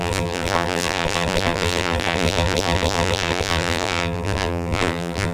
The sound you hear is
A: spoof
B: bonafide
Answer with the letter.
A